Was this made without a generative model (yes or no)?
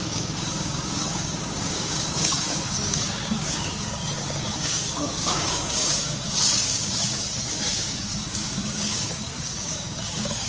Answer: no